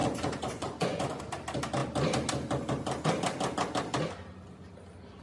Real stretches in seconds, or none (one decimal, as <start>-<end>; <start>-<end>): 1.2-5.2